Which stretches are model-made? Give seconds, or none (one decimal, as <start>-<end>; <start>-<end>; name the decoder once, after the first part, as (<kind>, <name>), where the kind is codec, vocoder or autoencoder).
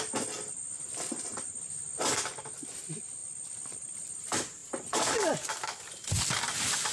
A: none